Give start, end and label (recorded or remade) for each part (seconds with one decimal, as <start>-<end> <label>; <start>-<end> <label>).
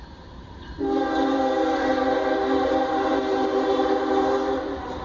0.0-5.0 remade